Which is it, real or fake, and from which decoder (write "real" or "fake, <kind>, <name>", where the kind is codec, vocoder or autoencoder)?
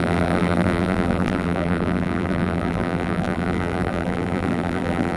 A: fake, vocoder, BigVGAN v2